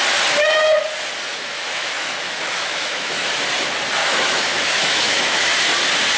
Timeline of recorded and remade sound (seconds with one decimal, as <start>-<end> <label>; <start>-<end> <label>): 0.0-1.3 recorded; 1.3-3.3 remade; 3.3-4.0 recorded; 4.0-5.5 remade; 5.5-6.2 recorded